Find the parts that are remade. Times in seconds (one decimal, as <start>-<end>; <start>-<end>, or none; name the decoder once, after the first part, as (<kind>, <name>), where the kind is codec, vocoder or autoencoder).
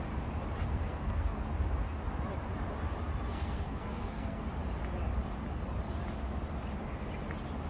0.7-1.4 (codec, SNAC); 3.3-4.4